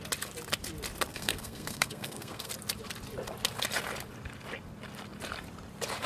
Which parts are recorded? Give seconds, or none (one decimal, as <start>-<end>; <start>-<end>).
0.0-1.1; 2.5-6.1